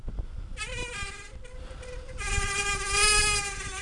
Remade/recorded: recorded